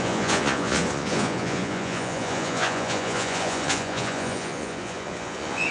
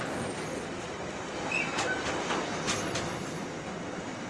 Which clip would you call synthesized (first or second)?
first